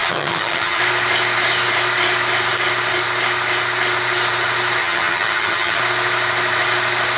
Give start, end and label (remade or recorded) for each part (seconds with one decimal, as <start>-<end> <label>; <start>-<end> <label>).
0.0-0.8 remade; 0.8-4.8 recorded; 4.8-5.8 remade; 5.8-7.2 recorded

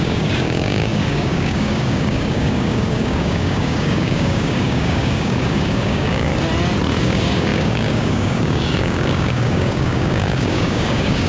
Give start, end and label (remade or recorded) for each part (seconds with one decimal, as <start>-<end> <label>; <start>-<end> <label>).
0.0-6.3 remade; 6.3-7.0 recorded; 7.0-11.3 remade

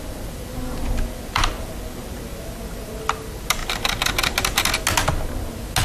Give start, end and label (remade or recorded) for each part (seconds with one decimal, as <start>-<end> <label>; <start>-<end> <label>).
0.0-5.8 recorded

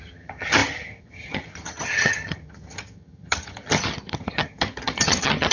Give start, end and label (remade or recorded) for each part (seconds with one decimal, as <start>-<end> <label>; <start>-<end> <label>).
0.0-5.5 remade

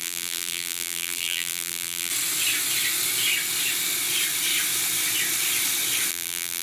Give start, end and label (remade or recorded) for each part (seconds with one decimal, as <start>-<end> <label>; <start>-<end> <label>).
0.0-2.1 remade; 2.1-6.1 recorded; 6.1-6.6 remade

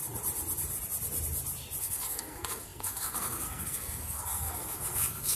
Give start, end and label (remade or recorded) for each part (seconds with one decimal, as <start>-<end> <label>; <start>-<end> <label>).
0.0-1.8 recorded; 1.8-5.4 remade